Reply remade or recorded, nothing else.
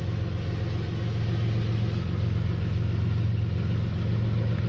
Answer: recorded